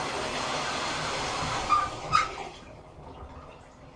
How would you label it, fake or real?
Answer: real